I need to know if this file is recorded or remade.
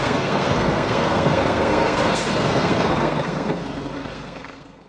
remade